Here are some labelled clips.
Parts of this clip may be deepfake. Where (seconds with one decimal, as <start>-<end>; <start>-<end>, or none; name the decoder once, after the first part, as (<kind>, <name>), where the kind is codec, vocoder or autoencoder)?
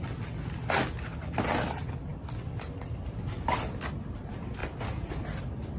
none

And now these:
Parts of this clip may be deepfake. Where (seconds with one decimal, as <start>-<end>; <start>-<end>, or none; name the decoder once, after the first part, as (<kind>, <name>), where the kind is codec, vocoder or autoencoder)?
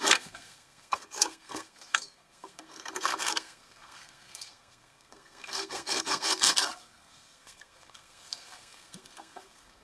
0.0-9.8 (codec, SNAC)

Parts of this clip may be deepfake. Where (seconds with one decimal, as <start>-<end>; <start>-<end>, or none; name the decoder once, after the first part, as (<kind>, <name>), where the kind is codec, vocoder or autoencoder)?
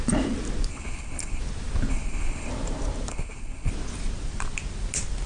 0.7-1.4 (codec, HILCodec); 1.9-2.5; 3.1-3.7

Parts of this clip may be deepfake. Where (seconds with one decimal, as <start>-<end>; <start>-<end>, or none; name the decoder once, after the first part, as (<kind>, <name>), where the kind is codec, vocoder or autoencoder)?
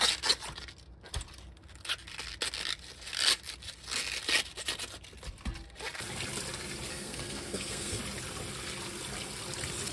6.9-8.0 (codec, SNAC)